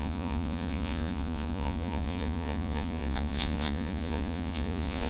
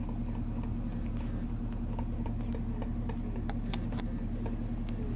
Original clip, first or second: second